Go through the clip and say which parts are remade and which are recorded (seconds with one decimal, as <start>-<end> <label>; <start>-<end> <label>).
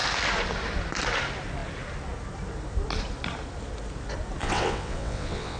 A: 0.0-4.4 recorded; 4.4-5.6 remade